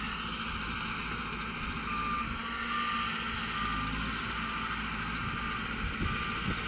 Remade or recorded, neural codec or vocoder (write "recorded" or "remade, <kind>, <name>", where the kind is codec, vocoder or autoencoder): recorded